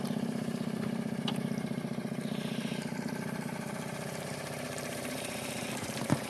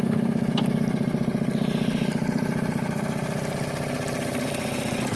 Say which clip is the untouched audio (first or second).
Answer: second